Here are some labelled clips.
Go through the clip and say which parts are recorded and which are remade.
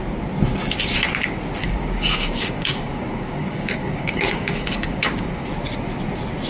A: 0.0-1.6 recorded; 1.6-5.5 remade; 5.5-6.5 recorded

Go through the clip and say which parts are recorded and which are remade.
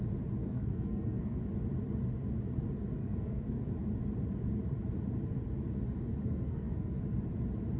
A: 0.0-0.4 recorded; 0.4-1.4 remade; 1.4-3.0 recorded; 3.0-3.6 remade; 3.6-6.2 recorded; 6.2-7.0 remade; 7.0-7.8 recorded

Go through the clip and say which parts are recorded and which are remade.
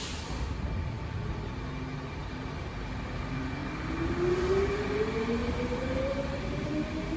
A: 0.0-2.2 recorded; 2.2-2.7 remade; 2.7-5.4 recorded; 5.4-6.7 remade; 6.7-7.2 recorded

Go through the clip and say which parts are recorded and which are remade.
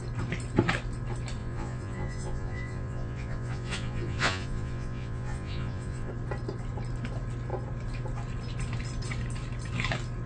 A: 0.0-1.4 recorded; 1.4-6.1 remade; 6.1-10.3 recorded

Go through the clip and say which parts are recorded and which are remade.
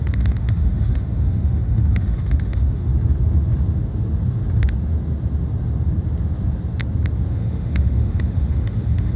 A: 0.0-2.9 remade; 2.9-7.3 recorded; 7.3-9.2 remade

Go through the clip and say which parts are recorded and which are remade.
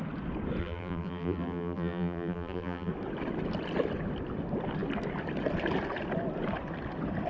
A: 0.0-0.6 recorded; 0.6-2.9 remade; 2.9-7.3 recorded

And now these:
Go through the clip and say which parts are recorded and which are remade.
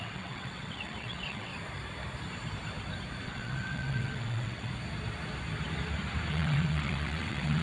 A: 0.0-1.5 remade; 1.5-3.2 recorded; 3.2-4.7 remade; 4.7-6.3 recorded; 6.3-7.6 remade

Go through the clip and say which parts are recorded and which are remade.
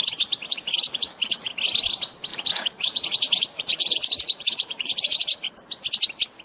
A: 0.0-0.5 recorded; 0.5-1.5 remade; 1.5-2.3 recorded; 2.3-5.5 remade; 5.5-6.4 recorded